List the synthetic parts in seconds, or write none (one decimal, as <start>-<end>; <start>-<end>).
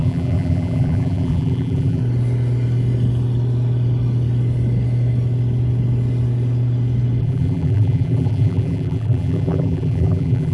0.0-2.0; 7.2-10.5